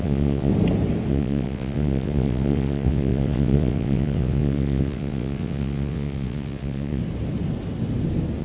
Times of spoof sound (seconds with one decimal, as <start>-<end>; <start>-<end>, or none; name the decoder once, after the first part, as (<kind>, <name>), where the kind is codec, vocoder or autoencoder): 0.0-0.5 (vocoder, WaveNeXt); 1.1-7.0